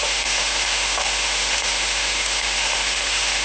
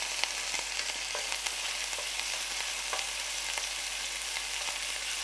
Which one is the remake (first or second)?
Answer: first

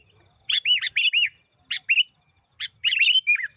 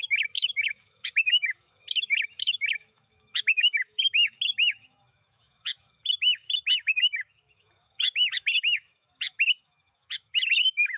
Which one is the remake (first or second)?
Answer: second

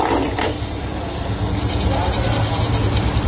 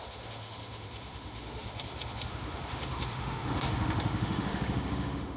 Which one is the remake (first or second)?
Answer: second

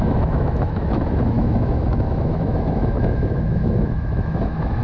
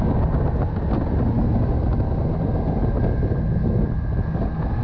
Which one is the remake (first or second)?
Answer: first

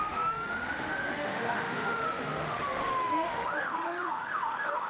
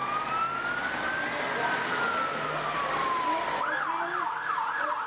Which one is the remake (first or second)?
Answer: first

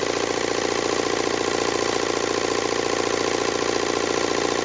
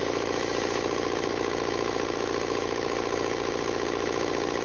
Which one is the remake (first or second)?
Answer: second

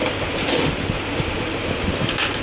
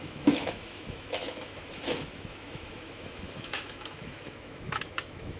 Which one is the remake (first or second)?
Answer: second